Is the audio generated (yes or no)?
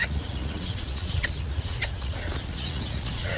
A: yes